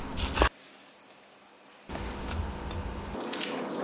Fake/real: real